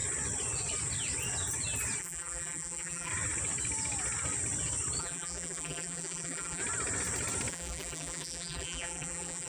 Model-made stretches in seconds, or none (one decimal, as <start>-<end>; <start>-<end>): 2.0-3.1; 5.0-6.6; 7.5-9.5